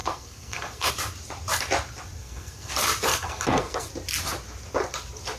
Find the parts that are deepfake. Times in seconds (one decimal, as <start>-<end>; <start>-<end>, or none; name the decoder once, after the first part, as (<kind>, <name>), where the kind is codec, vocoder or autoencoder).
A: 0.0-0.9 (codec, SNAC); 2.2-2.7; 3.1-3.9